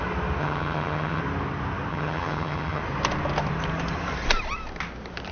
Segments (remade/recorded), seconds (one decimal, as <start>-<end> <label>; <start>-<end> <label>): 0.0-0.4 recorded; 0.4-1.2 remade; 1.2-1.9 recorded; 1.9-2.8 remade; 2.8-5.3 recorded

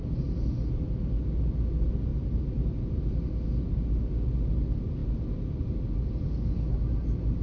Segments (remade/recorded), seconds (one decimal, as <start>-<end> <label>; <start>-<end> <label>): 0.0-7.4 recorded